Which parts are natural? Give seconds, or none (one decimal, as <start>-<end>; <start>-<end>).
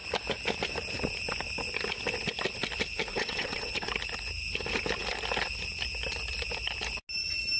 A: 0.0-3.1; 3.9-7.6